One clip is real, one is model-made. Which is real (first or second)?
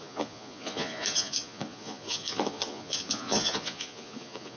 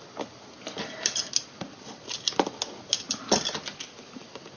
second